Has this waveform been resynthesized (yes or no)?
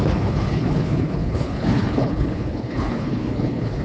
yes